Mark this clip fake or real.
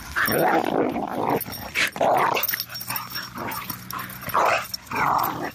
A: real